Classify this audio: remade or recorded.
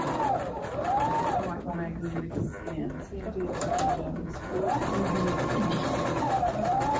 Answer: recorded